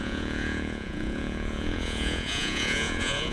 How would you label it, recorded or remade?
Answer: remade